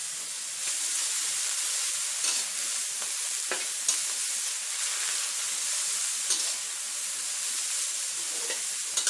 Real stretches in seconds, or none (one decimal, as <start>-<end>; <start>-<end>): 1.2-9.1